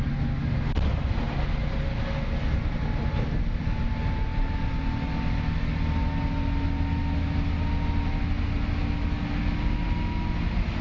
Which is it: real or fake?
real